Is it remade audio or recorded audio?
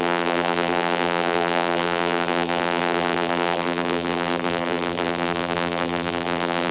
remade